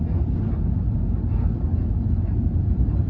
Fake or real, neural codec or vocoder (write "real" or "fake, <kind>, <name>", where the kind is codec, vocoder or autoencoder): real